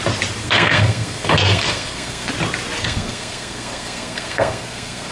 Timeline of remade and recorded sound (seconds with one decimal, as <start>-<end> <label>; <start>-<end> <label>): 0.0-0.4 recorded; 0.4-2.3 remade; 2.3-2.8 recorded; 2.8-5.1 remade